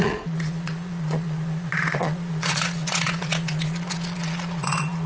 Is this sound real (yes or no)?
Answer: no